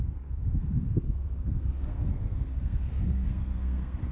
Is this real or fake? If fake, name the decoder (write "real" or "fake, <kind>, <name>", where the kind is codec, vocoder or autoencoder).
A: fake, codec, SNAC